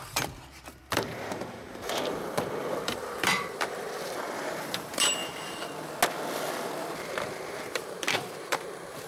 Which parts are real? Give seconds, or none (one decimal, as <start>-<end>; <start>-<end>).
5.2-7.5